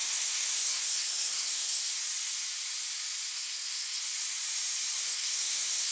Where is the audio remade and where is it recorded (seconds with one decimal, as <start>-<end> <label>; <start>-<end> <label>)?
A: 0.0-1.9 remade; 1.9-3.3 recorded; 3.3-4.0 remade; 4.0-5.0 recorded; 5.0-5.9 remade